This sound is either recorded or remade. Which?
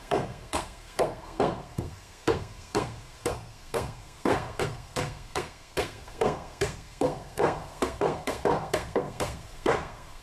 remade